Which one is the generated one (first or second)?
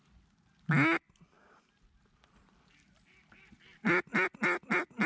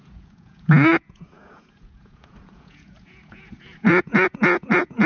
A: second